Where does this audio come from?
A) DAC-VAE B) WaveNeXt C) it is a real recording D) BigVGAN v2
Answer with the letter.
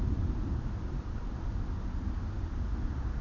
C